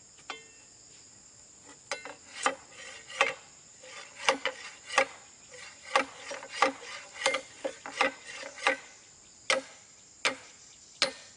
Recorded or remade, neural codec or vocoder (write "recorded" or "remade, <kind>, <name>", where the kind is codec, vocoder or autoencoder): recorded